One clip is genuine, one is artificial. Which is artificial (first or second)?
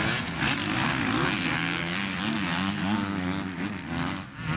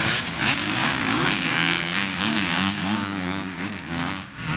second